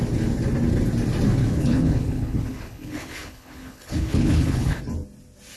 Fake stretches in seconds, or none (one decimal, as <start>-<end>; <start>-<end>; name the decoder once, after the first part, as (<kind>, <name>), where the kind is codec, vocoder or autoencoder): 1.4-4.8 (codec, HILCodec)